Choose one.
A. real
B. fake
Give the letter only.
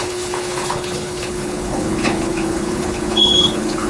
B